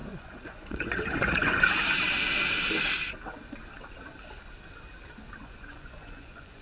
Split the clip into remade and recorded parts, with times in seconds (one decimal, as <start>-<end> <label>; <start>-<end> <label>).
0.0-1.6 remade; 1.6-5.4 recorded; 5.4-6.6 remade